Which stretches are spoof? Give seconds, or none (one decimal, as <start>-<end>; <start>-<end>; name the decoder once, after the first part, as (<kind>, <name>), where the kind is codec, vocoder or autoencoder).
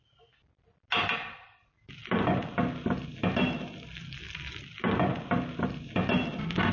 none